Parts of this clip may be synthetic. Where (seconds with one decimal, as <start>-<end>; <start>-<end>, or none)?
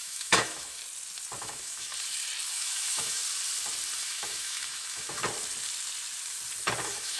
0.0-0.8; 1.4-1.9; 2.5-3.2; 4.0-5.2; 6.8-7.2